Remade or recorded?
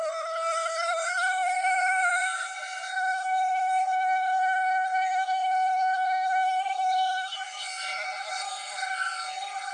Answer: remade